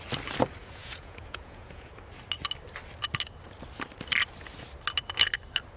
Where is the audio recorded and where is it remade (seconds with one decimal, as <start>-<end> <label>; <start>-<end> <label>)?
0.0-0.6 recorded; 0.6-1.9 remade; 1.9-5.8 recorded